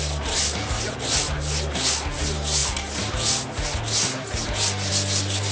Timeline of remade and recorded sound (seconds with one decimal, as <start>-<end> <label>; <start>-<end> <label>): 0.0-5.5 recorded